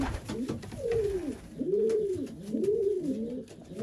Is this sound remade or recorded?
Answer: recorded